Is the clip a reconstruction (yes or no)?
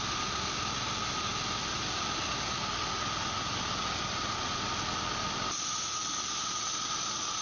no